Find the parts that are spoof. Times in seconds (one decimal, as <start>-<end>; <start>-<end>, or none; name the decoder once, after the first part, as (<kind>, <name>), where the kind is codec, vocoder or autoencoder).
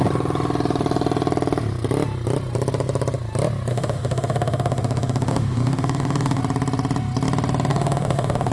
3.7-6.4 (autoencoder, DAC-VAE); 7.7-8.5